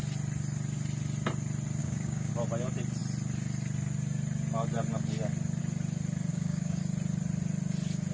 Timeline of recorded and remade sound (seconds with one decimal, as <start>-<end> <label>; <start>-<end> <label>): 0.0-1.8 recorded; 1.8-2.3 remade; 2.3-6.3 recorded; 6.3-6.8 remade; 6.8-8.1 recorded